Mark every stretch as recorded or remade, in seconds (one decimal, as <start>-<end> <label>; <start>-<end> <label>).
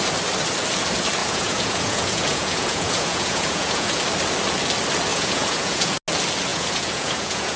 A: 0.0-1.2 recorded; 1.2-4.0 remade; 4.0-5.1 recorded; 5.1-6.0 remade; 6.0-6.5 recorded; 6.5-7.6 remade